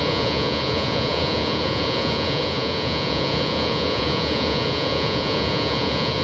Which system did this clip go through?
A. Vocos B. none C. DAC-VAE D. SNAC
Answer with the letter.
A